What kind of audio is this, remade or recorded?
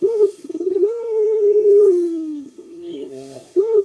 remade